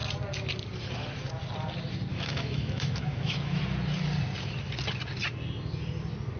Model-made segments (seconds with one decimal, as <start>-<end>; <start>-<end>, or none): 2.1-3.6

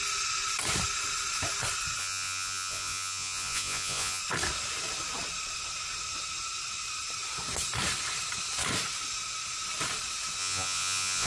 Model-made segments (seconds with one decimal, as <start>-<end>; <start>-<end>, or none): 2.0-4.2; 10.4-11.3